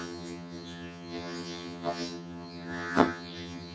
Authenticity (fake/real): fake